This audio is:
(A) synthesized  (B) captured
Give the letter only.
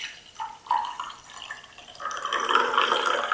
B